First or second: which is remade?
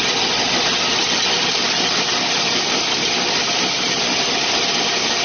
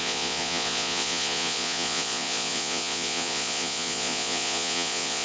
second